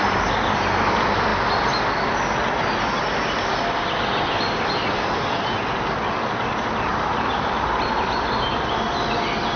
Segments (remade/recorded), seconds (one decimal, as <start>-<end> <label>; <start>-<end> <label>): 0.0-6.9 recorded; 6.9-8.7 remade; 8.7-9.6 recorded